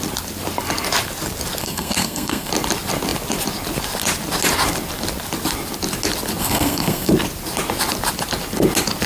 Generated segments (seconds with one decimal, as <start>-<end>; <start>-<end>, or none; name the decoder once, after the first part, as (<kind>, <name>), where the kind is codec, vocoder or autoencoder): 1.6-2.5 (codec, SNAC); 6.4-7.1